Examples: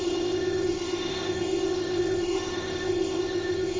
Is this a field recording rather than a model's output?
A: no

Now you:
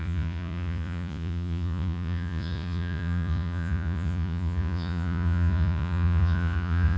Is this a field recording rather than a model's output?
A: no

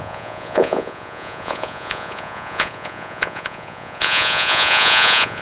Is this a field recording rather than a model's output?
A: no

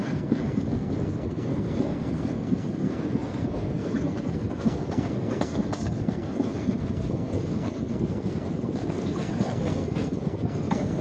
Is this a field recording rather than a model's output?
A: no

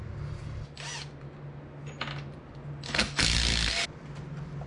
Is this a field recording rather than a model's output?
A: yes